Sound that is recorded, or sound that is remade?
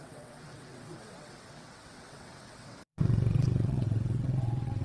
remade